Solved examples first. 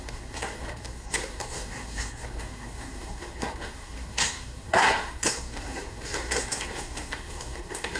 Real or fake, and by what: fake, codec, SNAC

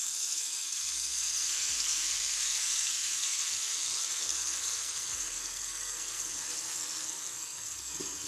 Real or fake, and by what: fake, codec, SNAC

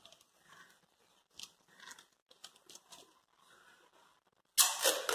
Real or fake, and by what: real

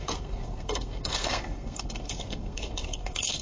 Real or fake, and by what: fake, codec, SNAC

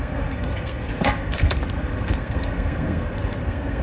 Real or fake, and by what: fake, codec, SNAC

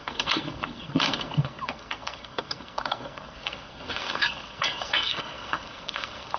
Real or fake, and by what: fake, codec, SNAC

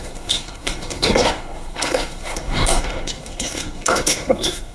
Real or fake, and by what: fake, codec, SNAC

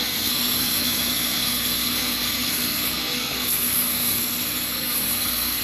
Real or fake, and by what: fake, codec, SNAC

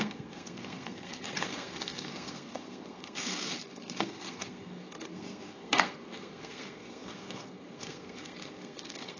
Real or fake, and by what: fake, codec, SNAC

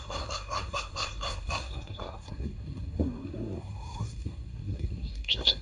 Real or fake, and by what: fake, codec, SNAC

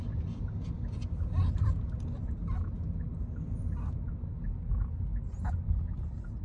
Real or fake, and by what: real